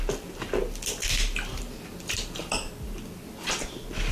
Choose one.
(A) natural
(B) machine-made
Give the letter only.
B